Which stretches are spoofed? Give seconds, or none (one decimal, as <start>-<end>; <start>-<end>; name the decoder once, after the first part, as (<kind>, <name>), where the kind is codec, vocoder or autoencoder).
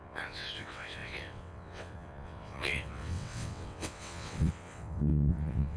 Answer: 0.0-5.8 (vocoder, WaveNeXt)